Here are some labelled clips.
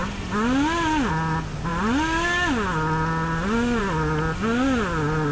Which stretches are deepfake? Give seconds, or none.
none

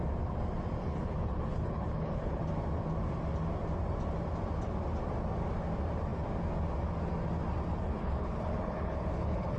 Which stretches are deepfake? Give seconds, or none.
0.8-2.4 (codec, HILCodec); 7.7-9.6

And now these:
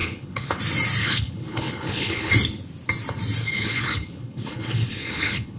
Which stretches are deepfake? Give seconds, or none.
0.0-0.6 (codec, HILCodec); 1.0-2.3; 3.4-5.6

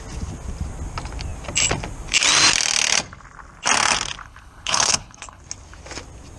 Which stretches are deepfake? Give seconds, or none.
4.2-5.4 (codec, HILCodec)